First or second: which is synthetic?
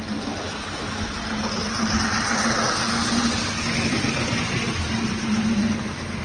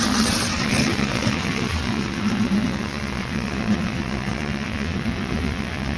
second